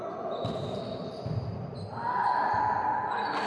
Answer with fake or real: real